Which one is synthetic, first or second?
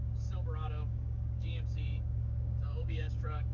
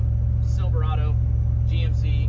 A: first